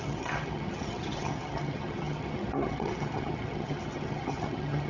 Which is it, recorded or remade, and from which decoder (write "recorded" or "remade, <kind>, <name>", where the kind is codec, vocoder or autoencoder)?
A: remade, vocoder, HiFi-GAN